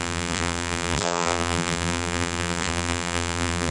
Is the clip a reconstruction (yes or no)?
yes